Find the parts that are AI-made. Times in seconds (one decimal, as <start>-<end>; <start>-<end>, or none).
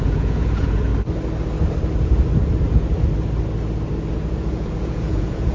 0.0-0.9; 4.1-5.5